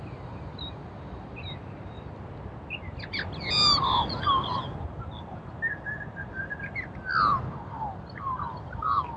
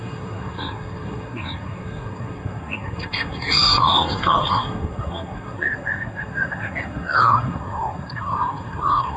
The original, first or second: first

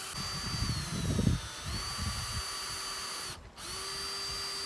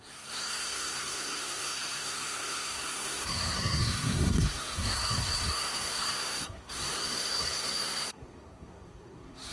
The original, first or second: first